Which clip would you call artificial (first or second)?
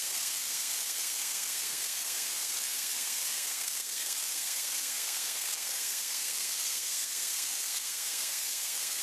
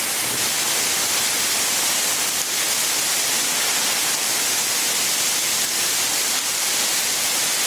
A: first